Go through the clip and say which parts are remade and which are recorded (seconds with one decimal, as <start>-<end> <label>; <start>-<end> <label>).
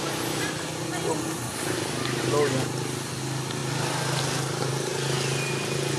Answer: 0.0-6.0 recorded